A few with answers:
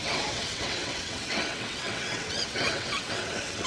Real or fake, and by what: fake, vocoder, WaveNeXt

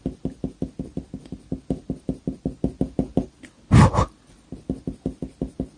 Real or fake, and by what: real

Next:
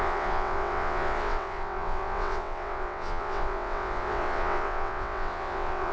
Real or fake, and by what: fake, vocoder, WaveNeXt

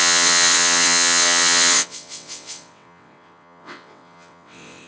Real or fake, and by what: fake, vocoder, WaveNeXt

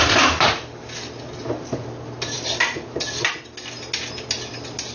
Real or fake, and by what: real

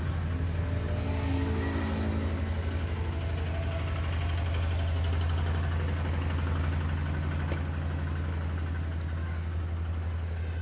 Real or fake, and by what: real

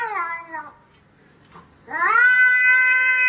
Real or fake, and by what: real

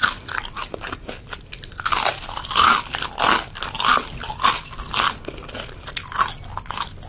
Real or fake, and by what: real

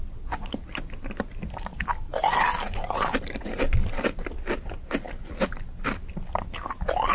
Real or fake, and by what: real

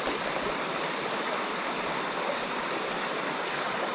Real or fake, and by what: real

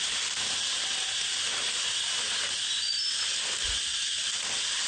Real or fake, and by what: real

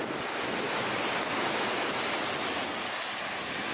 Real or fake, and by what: real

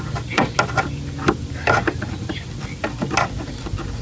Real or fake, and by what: real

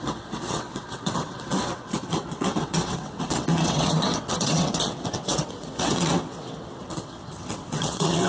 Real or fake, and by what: fake, vocoder, WaveNeXt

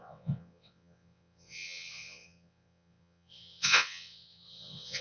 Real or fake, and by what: fake, vocoder, WaveNeXt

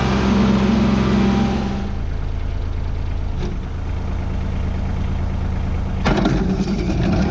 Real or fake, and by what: real